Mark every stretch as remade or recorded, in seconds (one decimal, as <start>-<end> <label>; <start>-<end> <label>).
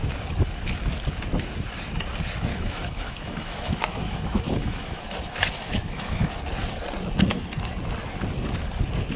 0.0-2.5 recorded; 2.5-6.3 remade; 6.3-9.2 recorded